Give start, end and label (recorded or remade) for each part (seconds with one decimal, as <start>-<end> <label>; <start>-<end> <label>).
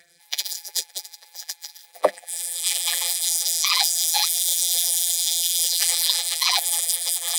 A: 0.0-7.4 remade